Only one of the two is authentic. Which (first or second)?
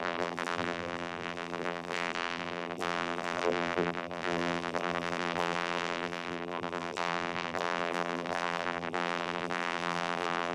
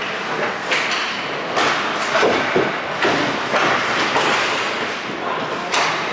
second